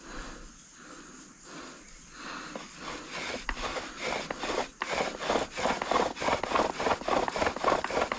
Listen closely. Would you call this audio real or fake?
real